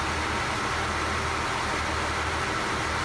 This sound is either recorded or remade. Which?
recorded